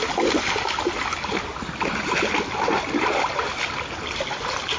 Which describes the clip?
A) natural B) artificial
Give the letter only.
A